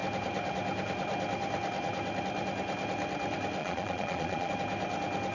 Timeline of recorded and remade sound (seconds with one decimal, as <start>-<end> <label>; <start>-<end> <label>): 0.0-3.6 recorded; 3.6-4.5 remade; 4.5-5.3 recorded